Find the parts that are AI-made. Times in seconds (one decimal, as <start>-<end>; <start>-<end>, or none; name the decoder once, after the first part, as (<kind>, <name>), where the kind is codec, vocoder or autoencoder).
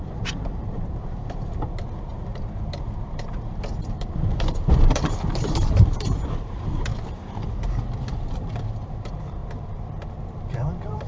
0.0-1.2 (vocoder, BigVGAN v2); 2.3-6.9; 8.1-9.4; 10.4-11.1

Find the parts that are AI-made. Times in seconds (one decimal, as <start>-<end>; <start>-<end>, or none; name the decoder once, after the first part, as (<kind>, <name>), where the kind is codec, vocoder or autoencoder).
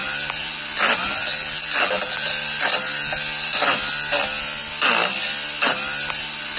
0.0-0.6 (vocoder, BigVGAN v2); 1.2-2.3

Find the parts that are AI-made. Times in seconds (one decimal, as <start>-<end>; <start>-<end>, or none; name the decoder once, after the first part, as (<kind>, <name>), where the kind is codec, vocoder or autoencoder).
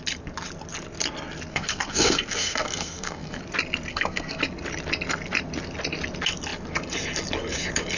1.5-3.4 (codec, SNAC); 3.9-4.4